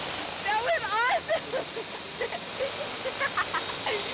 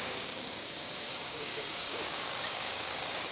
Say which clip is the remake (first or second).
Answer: second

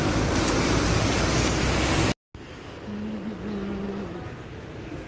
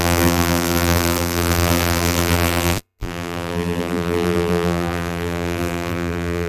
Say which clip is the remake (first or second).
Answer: second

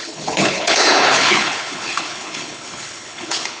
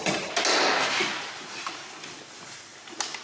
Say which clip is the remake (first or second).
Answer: first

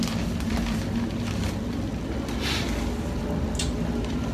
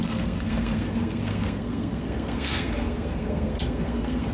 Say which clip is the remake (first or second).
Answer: second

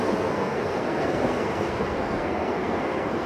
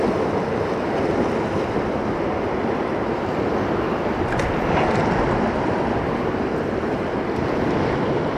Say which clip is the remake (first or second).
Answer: first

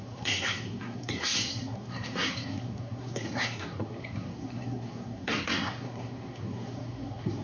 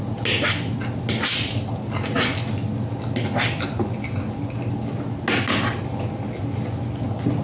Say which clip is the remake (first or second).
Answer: first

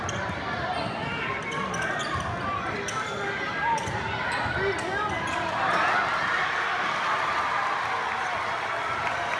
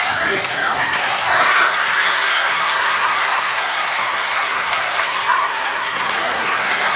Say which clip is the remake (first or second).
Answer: second